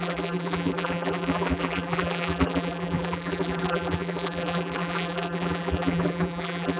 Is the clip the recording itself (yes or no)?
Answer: no